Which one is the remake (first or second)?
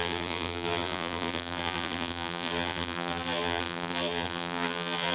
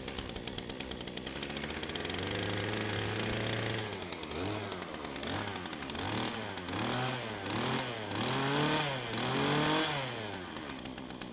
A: first